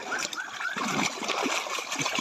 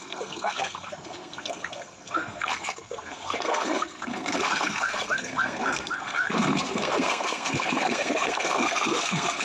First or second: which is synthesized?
second